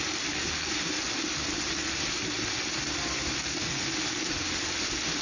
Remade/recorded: recorded